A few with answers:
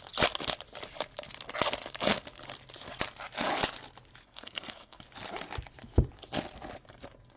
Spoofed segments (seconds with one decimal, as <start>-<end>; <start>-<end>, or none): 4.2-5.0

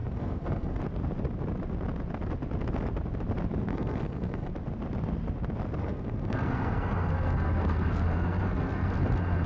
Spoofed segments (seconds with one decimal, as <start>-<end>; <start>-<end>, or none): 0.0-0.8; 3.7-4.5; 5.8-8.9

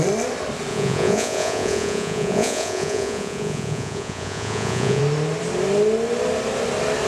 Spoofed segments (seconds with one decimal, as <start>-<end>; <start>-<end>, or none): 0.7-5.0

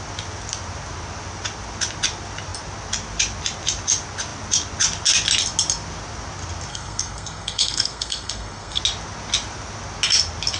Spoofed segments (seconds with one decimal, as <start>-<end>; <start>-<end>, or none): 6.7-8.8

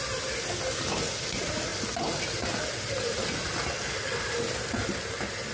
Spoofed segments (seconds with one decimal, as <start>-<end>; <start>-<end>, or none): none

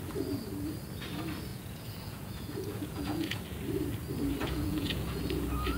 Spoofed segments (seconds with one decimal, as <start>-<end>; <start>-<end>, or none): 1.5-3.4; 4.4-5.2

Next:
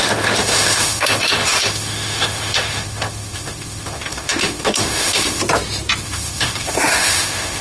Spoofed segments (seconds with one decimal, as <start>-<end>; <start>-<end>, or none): 0.0-5.4; 6.0-7.6

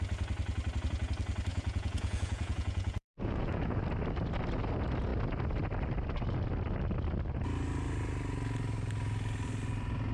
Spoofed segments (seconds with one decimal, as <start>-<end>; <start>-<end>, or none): 1.5-3.8